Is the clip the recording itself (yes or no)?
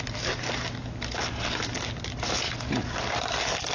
yes